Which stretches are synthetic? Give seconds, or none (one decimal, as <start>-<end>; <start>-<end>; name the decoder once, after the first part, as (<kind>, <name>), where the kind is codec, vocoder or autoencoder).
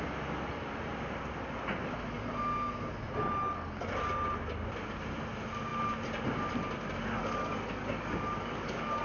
7.2-9.0 (codec, DAC)